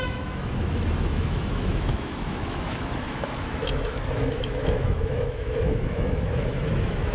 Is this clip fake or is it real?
fake